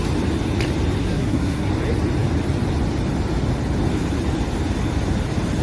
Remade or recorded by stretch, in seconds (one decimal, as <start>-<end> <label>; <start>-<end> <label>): 0.0-1.0 recorded; 1.0-1.7 remade; 1.7-5.6 recorded